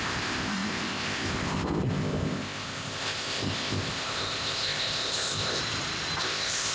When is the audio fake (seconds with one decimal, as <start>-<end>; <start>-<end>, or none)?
0.0-5.6; 6.2-6.7